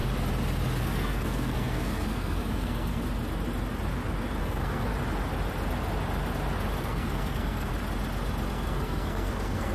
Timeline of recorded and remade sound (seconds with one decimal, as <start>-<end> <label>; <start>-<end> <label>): 0.0-0.8 recorded; 0.8-3.0 remade; 3.0-4.4 recorded; 4.4-4.9 remade; 4.9-6.8 recorded; 6.8-7.7 remade; 7.7-8.5 recorded; 8.5-9.7 remade